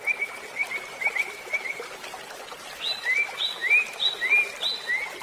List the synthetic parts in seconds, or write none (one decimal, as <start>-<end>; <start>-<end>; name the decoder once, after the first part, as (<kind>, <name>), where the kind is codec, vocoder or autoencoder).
none